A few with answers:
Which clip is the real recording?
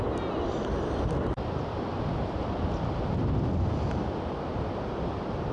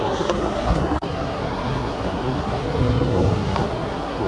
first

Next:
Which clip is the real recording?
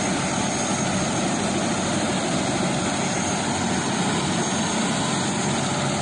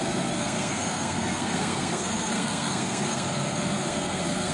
first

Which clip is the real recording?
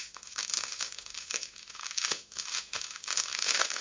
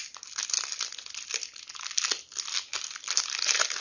second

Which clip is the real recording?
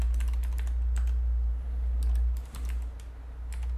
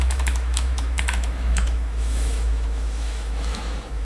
first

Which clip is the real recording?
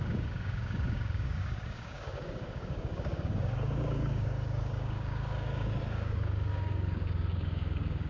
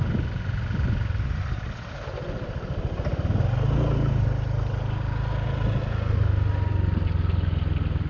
second